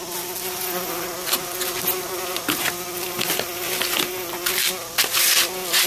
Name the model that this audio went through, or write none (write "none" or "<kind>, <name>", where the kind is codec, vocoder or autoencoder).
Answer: none